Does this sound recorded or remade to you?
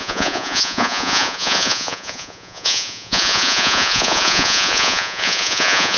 remade